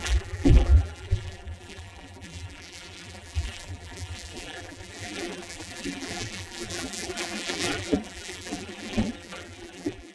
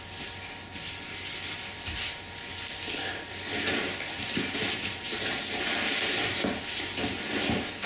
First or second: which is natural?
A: second